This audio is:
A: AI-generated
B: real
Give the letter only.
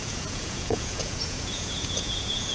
A